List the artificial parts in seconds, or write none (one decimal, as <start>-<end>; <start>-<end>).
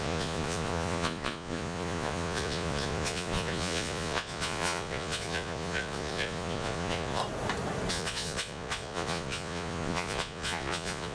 0.0-7.2; 7.9-11.1